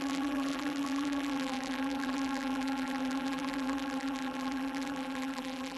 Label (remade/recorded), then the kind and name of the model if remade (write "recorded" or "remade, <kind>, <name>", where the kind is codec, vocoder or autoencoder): remade, vocoder, BigVGAN v2